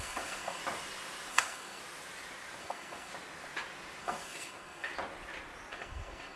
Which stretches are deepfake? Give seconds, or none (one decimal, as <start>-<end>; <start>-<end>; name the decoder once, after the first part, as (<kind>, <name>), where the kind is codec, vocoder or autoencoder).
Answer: 0.0-0.6 (codec, SNAC); 1.3-1.8; 2.6-3.1; 4.0-4.9; 5.7-6.4